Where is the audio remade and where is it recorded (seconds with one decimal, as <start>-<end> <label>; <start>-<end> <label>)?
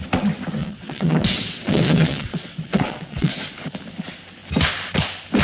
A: 0.0-0.6 recorded; 0.6-3.3 remade; 3.3-5.4 recorded